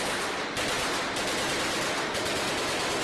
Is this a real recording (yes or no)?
no